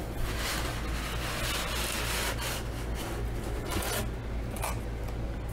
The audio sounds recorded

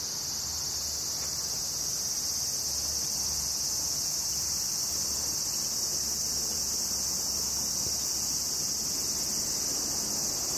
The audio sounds recorded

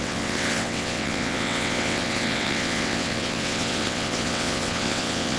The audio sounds remade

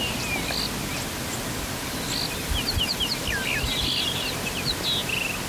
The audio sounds recorded